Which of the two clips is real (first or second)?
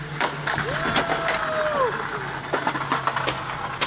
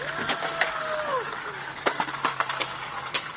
first